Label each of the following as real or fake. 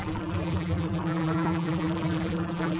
fake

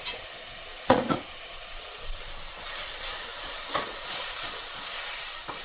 fake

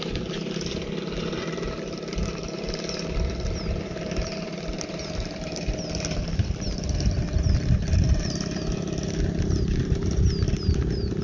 real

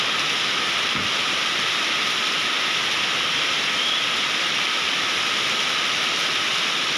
real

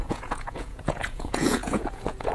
fake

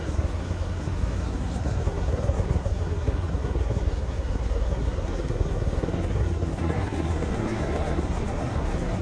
fake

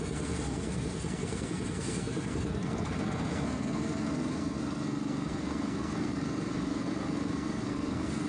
fake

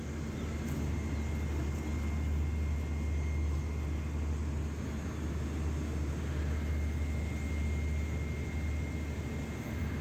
real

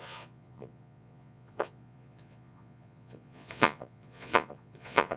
fake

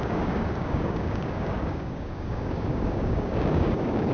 fake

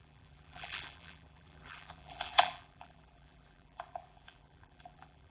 fake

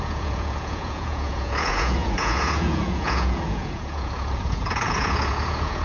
fake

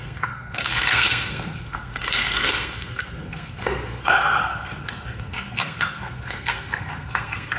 fake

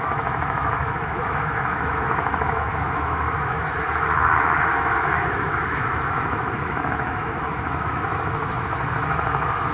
fake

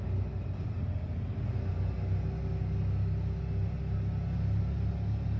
real